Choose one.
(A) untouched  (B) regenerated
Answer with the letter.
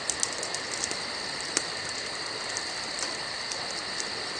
A